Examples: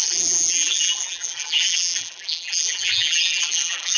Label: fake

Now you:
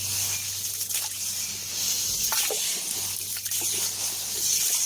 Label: real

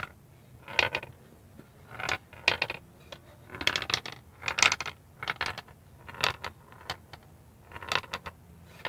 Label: real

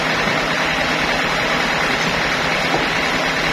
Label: real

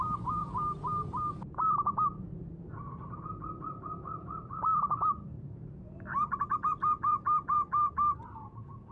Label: fake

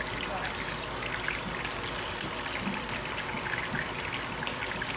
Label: real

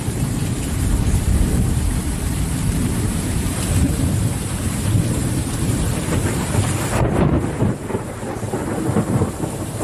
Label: fake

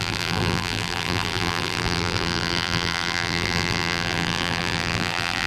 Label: fake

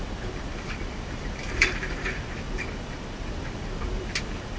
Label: fake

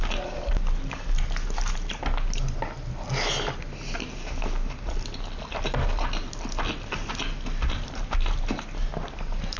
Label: real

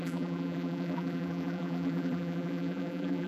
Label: fake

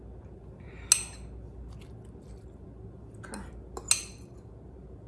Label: real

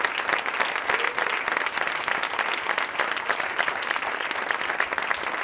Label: real